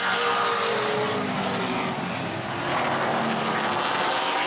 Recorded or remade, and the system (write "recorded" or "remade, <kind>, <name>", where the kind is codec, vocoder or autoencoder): recorded